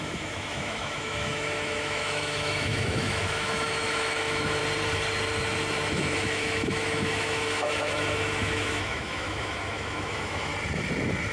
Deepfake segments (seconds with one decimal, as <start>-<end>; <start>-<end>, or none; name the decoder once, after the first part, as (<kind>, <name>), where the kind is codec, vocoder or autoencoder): 0.0-4.6 (autoencoder, DAC-VAE); 5.9-10.5